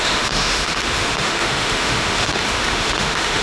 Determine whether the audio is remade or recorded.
remade